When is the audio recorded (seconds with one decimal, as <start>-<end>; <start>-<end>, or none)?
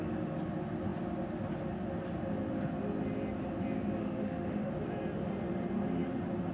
0.0-4.0; 4.7-6.5